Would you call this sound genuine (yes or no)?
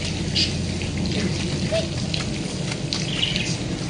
yes